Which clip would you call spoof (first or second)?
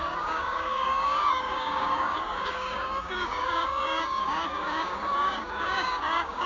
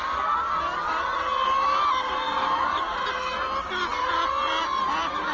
first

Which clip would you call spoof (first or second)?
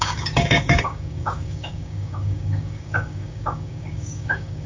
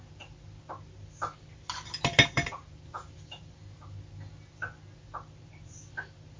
first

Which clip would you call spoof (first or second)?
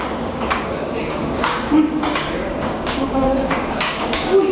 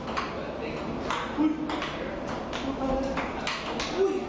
first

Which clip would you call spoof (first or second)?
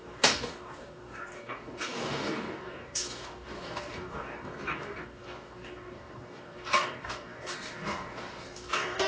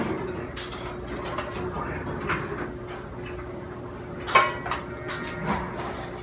first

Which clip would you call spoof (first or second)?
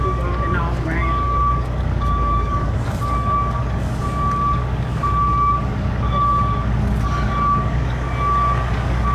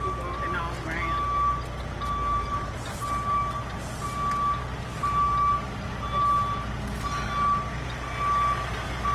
first